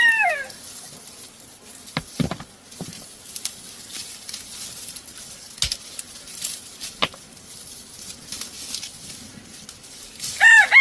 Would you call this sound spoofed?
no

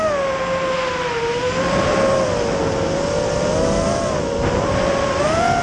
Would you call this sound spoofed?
no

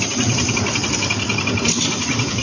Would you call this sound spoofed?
yes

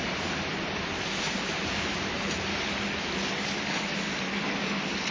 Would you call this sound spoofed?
yes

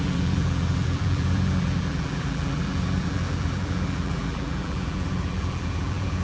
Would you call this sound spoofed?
yes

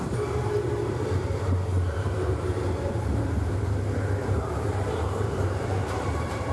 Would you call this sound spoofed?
yes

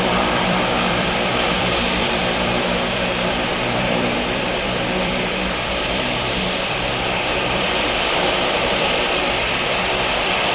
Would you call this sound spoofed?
yes